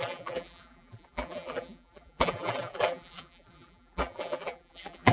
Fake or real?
fake